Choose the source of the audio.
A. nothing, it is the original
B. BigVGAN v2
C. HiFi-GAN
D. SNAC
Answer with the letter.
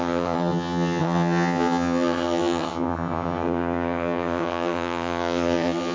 C